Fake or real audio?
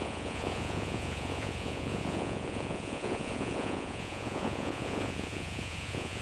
fake